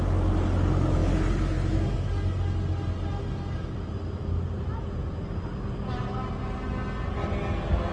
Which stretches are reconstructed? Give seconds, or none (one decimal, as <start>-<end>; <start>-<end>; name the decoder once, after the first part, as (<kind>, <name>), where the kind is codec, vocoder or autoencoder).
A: none

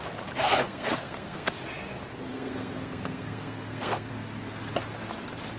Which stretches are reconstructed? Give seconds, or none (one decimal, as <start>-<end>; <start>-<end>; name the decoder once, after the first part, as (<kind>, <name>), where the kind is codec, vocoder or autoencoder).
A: 0.4-1.6 (codec, SNAC); 2.3-4.1